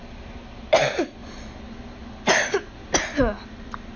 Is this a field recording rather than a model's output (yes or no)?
yes